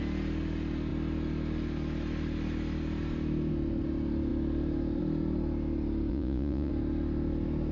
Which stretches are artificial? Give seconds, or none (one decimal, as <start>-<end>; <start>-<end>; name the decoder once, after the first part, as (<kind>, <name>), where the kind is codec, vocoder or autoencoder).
6.1-6.7 (vocoder, Vocos)